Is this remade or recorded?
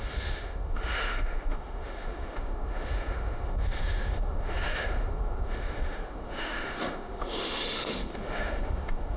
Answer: remade